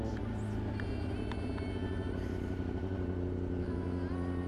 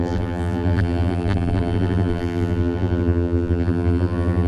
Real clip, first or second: first